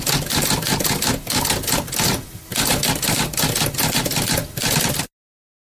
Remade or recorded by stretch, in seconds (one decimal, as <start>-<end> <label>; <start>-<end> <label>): 0.0-5.7 recorded